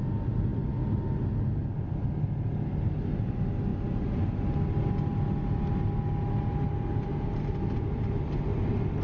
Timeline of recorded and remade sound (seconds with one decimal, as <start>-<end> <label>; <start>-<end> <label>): 0.0-9.0 recorded